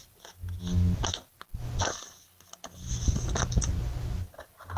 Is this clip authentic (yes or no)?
yes